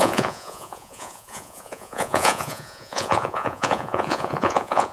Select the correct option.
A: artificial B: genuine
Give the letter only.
A